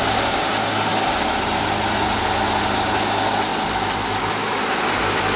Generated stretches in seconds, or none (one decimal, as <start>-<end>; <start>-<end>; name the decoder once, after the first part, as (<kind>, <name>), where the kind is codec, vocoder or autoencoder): none